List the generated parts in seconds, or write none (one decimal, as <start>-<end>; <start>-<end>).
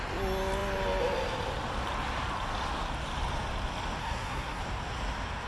4.0-4.6